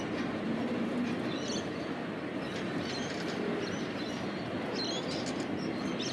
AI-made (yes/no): no